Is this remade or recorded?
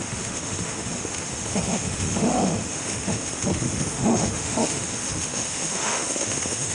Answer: remade